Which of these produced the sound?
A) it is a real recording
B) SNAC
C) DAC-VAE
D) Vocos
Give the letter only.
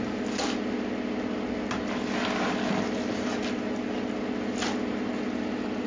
A